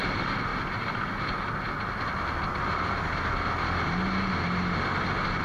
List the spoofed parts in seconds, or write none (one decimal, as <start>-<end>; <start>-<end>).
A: none